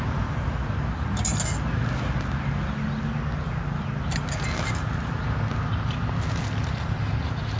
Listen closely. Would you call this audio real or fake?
real